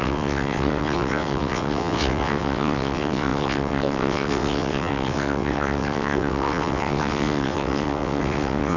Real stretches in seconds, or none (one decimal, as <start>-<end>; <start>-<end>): none